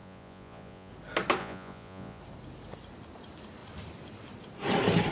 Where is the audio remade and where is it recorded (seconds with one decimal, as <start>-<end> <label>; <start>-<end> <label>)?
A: 0.0-0.9 remade; 0.9-1.4 recorded; 1.4-2.2 remade; 2.2-5.1 recorded